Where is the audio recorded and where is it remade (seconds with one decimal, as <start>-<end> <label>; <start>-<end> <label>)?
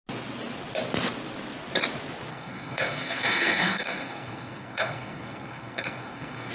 0.0-2.3 recorded; 2.3-6.5 remade